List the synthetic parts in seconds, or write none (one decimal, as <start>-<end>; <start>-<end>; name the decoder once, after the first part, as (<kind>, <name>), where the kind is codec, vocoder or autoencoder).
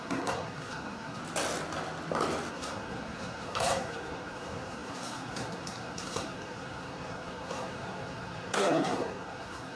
0.0-1.2 (codec, SNAC); 2.5-9.8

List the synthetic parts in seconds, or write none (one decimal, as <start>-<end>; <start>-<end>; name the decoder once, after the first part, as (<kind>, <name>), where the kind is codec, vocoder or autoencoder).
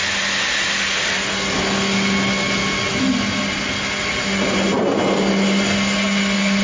none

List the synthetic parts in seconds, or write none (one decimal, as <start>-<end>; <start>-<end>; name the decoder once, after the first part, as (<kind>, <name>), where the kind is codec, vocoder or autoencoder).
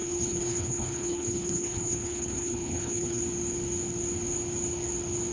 0.0-3.2 (codec, HILCodec)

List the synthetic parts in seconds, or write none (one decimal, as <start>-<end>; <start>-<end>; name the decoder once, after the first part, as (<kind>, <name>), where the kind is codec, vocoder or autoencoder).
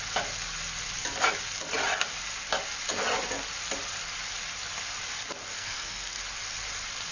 5.5-6.2 (codec, SNAC)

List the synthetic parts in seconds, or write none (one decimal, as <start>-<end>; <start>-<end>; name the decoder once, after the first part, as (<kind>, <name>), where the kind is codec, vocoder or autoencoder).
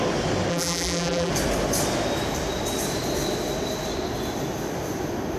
0.5-1.3 (vocoder, BigVGAN v2)